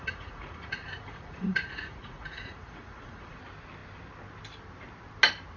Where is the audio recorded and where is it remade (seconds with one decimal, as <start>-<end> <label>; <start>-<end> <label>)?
0.0-3.4 remade; 3.4-5.6 recorded